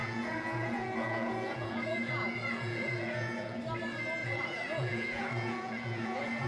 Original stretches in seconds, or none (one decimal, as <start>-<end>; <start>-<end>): 3.6-4.2